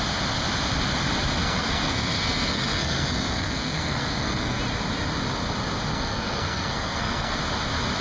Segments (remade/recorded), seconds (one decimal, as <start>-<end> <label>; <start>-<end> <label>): 0.0-1.4 recorded; 1.4-4.6 remade; 4.6-5.9 recorded; 5.9-7.4 remade; 7.4-8.0 recorded